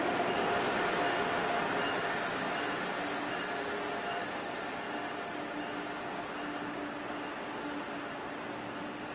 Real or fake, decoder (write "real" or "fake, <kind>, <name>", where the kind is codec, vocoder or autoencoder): real